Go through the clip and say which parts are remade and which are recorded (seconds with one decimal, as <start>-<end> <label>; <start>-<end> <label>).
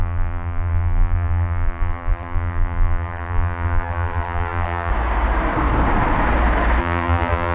0.0-4.9 remade; 4.9-6.8 recorded; 6.8-7.5 remade